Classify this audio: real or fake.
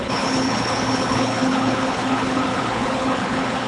fake